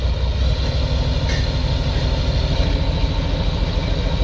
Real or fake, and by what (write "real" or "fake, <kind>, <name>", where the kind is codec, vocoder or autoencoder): real